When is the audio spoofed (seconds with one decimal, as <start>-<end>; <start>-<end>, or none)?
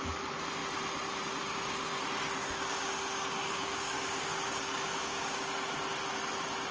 2.4-5.5